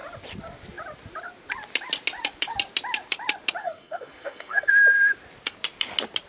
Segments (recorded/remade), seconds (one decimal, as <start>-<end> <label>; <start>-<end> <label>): 0.0-3.6 recorded; 3.6-4.7 remade; 4.7-6.3 recorded